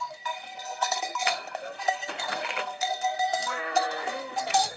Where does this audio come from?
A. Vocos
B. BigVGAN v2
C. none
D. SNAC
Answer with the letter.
D